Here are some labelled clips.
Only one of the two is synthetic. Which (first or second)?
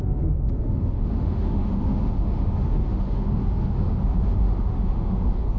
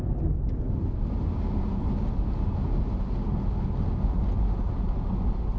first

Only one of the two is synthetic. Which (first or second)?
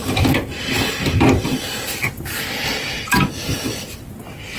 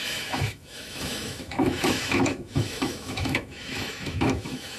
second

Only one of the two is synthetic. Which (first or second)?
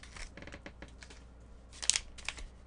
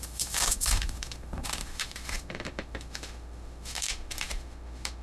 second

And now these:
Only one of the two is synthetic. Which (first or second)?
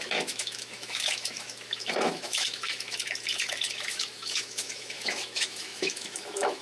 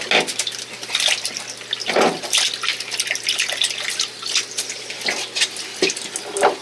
first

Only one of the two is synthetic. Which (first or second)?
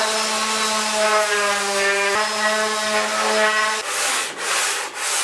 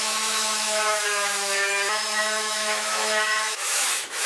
second